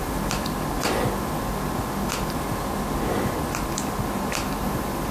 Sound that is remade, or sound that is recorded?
recorded